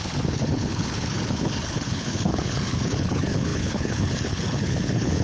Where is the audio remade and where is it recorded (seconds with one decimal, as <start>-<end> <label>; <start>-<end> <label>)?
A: 0.0-5.2 remade